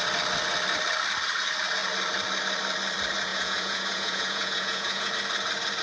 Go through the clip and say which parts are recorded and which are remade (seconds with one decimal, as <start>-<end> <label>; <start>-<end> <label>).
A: 0.0-3.3 recorded; 3.3-5.1 remade; 5.1-5.8 recorded